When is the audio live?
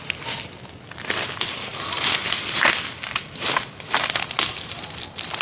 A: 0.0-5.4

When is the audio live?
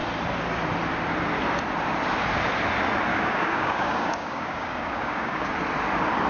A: 0.0-3.1; 5.5-6.3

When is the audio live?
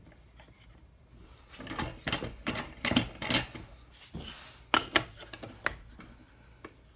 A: 0.0-4.8; 5.4-7.0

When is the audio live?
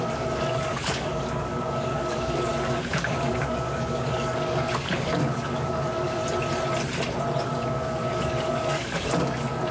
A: 6.2-7.4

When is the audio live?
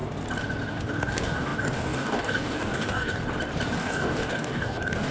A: 0.0-0.7; 3.2-3.8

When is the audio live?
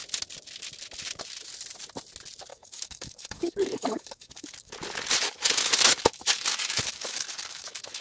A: 0.0-2.5; 4.7-5.2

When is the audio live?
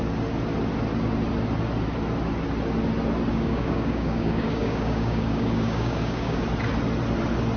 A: 0.0-3.3; 6.4-7.6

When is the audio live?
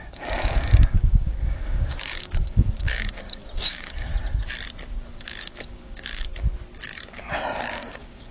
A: 4.1-5.2; 6.3-7.6